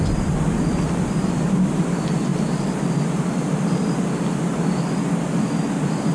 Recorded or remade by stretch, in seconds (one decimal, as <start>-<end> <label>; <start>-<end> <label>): 0.0-6.1 recorded